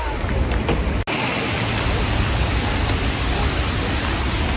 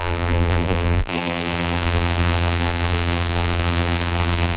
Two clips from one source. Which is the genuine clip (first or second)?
first